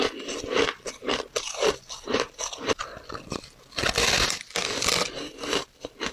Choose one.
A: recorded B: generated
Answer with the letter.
A